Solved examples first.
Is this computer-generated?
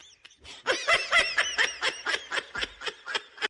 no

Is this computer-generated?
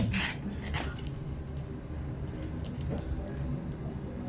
no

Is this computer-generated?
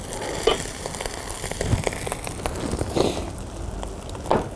no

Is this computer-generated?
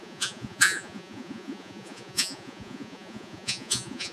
yes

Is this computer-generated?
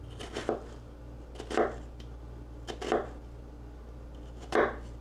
no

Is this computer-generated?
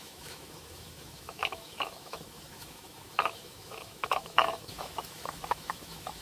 yes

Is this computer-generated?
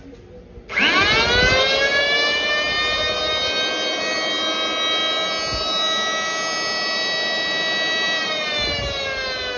no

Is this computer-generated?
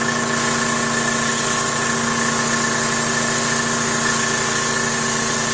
no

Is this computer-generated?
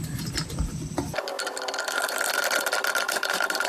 no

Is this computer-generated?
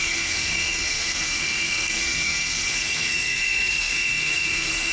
yes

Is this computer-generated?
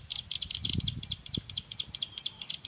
no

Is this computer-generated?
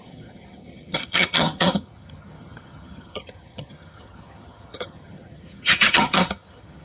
yes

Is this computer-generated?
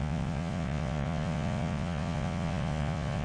yes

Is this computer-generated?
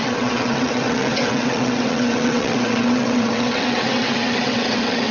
yes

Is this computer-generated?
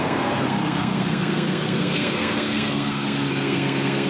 yes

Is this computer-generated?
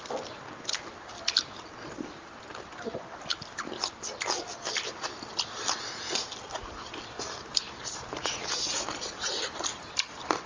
no